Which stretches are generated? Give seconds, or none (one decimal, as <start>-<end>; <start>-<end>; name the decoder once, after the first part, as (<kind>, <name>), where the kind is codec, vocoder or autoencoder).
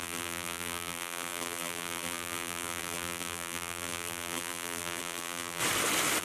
0.0-5.6 (vocoder, BigVGAN v2)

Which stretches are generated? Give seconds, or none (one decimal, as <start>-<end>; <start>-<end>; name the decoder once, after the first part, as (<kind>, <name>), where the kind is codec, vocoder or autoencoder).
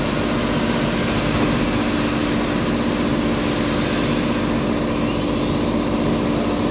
none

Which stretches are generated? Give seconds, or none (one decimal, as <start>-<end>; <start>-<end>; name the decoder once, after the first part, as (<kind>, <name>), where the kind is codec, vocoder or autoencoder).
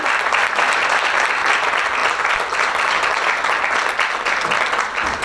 none